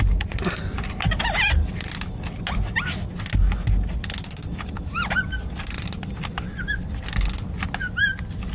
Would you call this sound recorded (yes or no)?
yes